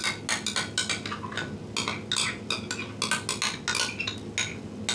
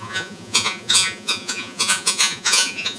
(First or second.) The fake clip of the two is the second